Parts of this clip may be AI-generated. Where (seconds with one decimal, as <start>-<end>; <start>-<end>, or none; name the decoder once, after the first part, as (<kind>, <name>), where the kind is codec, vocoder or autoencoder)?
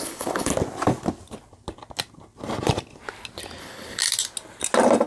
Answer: 0.0-0.5 (codec, HILCodec); 3.6-4.0